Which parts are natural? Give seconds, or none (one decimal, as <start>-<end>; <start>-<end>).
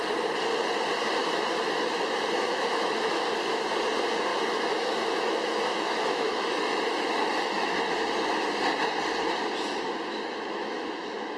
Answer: 0.0-1.2; 3.1-4.3; 7.9-10.1